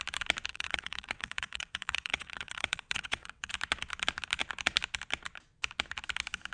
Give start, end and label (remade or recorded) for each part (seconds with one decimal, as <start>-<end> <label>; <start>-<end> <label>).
0.0-0.5 recorded; 0.5-3.5 remade; 3.5-6.5 recorded